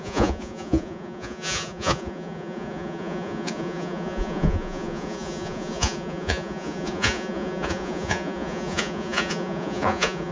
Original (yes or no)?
no